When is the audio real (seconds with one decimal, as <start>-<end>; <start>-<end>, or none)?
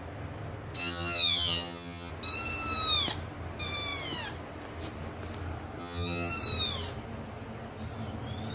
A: 0.0-0.8; 2.1-5.8; 6.3-8.5